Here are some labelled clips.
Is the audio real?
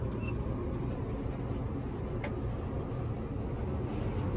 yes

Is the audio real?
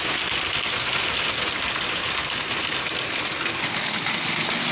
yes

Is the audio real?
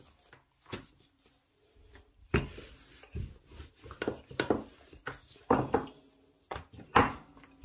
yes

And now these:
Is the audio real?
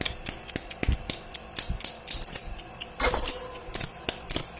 yes